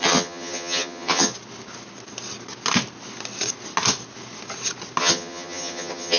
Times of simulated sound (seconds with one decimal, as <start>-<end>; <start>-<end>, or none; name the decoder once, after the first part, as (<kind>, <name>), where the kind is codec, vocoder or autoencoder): 0.0-1.3 (vocoder, HiFi-GAN); 5.0-6.2